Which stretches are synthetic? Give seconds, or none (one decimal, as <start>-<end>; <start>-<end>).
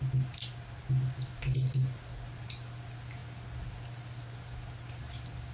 none